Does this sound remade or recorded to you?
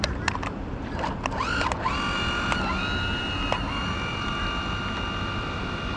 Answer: recorded